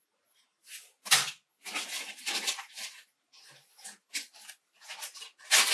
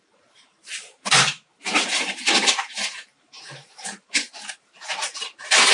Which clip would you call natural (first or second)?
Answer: first